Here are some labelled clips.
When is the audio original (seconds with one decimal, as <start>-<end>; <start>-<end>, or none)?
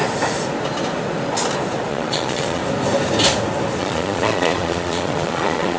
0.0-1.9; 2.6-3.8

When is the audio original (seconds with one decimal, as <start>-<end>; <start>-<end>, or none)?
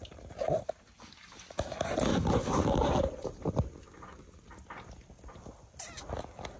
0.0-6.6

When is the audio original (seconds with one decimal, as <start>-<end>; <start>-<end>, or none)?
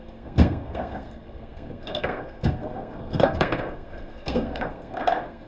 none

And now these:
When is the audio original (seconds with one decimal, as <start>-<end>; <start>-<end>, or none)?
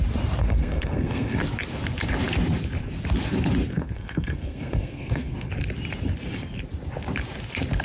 0.0-0.4; 1.4-3.7; 5.5-7.8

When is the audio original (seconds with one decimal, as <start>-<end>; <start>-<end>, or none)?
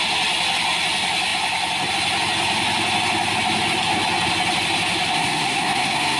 0.0-5.1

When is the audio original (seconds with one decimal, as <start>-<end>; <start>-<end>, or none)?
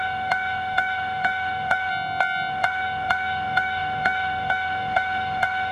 1.9-2.5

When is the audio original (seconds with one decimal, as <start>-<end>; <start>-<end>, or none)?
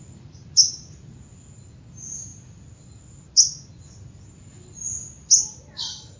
0.0-6.2